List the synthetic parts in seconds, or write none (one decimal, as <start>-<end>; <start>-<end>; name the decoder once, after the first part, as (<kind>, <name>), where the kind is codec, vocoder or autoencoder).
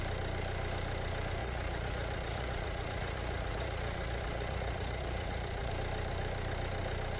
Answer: 1.4-5.7 (vocoder, Vocos)